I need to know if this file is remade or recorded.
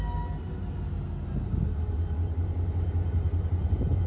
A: recorded